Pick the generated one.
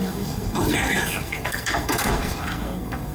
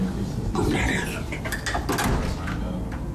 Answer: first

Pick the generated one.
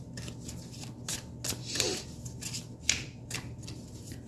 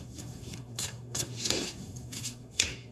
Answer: second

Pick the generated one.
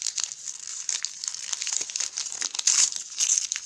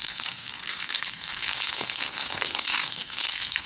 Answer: second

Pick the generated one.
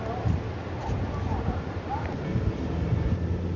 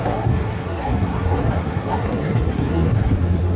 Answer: second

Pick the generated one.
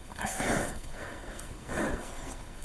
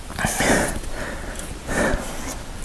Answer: first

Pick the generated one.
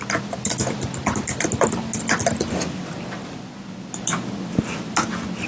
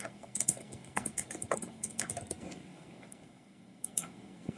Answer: second